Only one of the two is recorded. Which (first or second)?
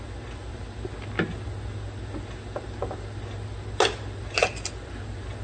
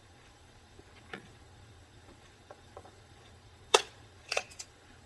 first